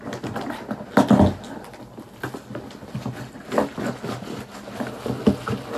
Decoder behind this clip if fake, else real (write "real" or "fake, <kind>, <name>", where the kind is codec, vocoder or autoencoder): real